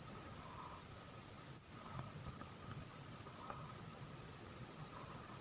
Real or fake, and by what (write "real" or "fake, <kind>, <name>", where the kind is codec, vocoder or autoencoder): real